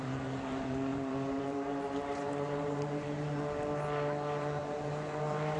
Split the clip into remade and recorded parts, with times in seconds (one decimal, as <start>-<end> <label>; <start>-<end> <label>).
0.0-5.6 remade